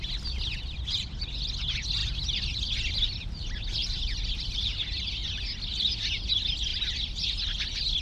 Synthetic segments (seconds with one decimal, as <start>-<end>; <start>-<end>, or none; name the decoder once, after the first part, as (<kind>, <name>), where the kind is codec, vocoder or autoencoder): none